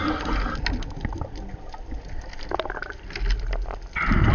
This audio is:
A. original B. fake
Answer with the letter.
A